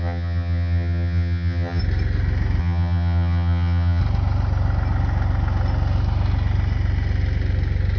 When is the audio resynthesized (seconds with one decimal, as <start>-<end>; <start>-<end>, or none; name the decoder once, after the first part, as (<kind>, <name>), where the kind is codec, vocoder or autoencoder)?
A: 0.0-1.8 (vocoder, HiFi-GAN); 2.6-4.0